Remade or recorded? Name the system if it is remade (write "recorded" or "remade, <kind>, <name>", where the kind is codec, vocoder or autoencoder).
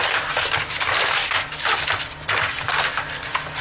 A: remade, vocoder, BigVGAN v2